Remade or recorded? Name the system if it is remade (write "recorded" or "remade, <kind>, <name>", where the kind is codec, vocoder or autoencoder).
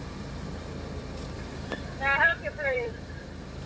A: remade, vocoder, BigVGAN v2